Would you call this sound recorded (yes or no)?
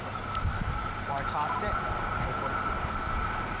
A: yes